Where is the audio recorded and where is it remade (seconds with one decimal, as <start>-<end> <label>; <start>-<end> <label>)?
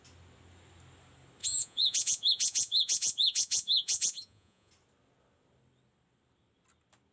0.0-1.4 recorded; 1.4-4.7 remade; 4.7-7.1 recorded